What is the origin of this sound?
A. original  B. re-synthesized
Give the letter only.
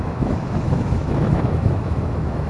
B